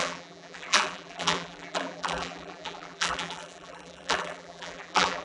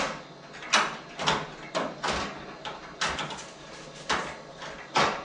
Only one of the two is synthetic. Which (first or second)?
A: first